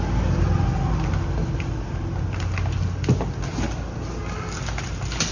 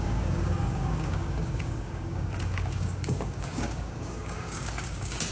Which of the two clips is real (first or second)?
first